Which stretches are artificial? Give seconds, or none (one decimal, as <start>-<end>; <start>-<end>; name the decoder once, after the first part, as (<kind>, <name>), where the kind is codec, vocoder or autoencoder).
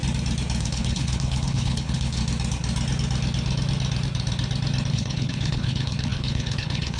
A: 0.6-2.2 (codec, HILCodec); 4.9-7.0